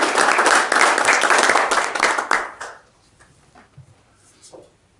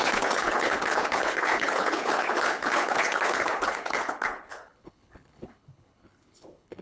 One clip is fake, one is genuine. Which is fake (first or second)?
second